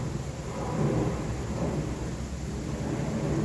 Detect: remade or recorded recorded